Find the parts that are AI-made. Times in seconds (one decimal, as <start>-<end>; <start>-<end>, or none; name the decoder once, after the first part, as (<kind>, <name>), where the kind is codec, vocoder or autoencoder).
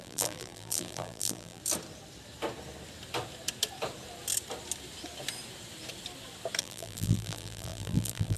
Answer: 0.0-1.6 (vocoder, BigVGAN v2); 6.6-8.4